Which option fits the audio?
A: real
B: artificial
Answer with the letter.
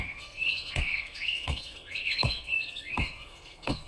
B